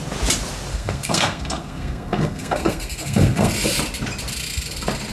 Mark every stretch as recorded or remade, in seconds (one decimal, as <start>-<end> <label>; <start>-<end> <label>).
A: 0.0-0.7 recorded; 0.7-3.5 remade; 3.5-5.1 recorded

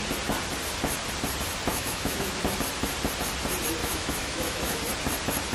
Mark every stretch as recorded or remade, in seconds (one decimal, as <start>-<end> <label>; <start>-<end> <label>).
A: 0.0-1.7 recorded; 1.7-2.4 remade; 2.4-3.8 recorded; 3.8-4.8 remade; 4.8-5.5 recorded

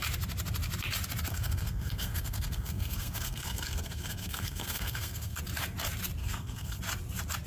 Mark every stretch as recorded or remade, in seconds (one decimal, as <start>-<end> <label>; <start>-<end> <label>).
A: 0.0-1.3 recorded; 1.3-5.4 remade; 5.4-6.2 recorded; 6.2-6.8 remade; 6.8-7.5 recorded